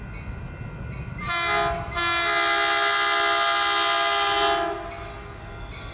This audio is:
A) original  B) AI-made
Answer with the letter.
A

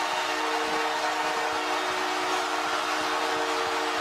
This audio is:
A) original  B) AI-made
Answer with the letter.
A